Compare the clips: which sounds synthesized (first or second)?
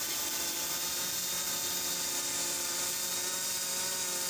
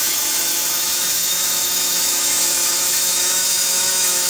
second